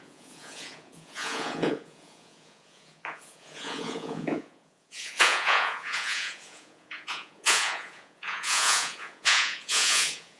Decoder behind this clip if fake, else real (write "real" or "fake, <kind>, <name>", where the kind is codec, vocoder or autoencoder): fake, vocoder, Vocos